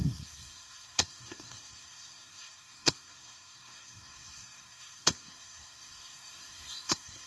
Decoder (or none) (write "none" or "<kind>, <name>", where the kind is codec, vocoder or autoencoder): codec, SNAC